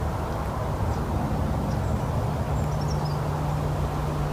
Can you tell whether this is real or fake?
real